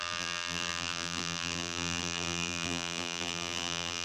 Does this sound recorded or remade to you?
remade